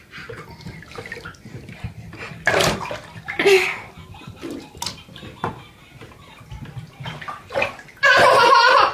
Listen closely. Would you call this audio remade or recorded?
recorded